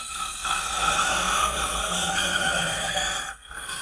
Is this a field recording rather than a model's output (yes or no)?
no